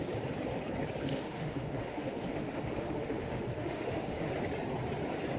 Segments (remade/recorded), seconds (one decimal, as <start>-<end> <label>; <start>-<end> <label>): 0.0-1.1 recorded; 1.1-4.3 remade; 4.3-5.4 recorded